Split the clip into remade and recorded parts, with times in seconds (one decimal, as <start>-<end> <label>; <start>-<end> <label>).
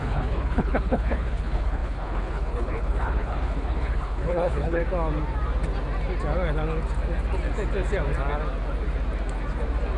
0.0-4.8 remade; 4.8-10.0 recorded